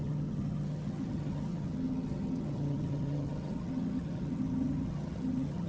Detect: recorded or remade remade